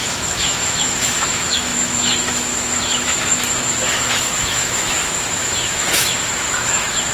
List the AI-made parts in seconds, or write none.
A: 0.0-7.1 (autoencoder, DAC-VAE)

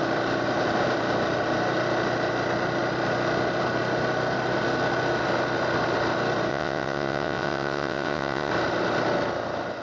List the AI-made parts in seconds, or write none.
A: 6.5-8.5 (vocoder, WaveNeXt)